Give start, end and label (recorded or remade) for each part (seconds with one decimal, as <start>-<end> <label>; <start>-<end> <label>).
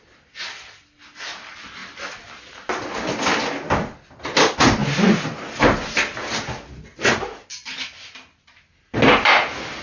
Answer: 0.0-9.8 recorded